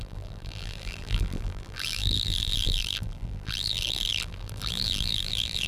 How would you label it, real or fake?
fake